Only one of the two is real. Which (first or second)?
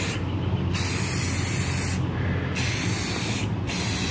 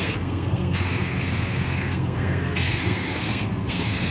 first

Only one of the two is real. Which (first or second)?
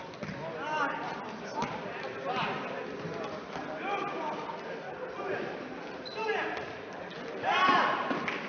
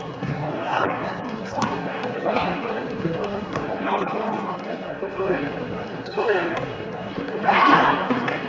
first